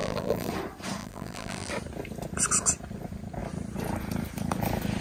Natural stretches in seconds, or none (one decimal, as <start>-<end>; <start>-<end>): 0.5-1.0; 1.7-5.0